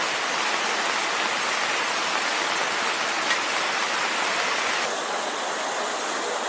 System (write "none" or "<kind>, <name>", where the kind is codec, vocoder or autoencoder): none